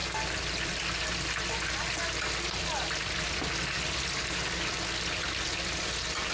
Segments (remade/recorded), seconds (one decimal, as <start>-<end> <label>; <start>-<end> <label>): 0.0-6.3 recorded